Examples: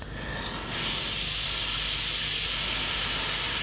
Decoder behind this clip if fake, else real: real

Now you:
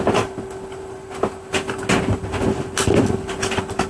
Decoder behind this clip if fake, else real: real